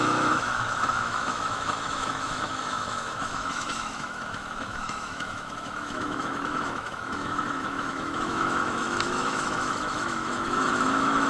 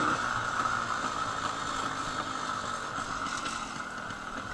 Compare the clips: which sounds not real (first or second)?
first